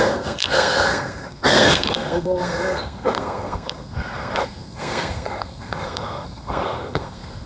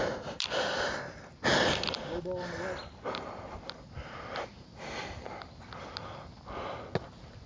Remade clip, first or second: first